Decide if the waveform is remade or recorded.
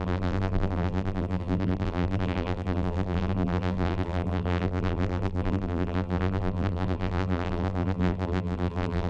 remade